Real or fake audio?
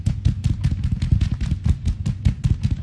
real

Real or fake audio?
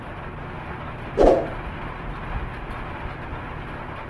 real